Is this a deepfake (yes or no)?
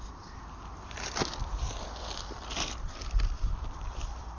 yes